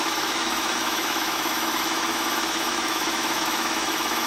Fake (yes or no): yes